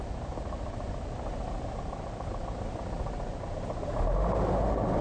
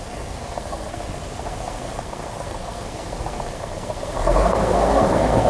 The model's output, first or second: second